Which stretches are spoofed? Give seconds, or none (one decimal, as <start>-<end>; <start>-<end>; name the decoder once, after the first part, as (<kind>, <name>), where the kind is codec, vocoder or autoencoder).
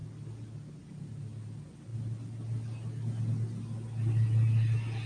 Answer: none